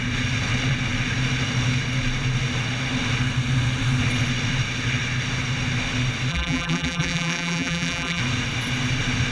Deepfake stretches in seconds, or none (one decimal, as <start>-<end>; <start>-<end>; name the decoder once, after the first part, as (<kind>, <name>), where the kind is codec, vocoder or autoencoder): 6.3-8.2 (vocoder, BigVGAN v2)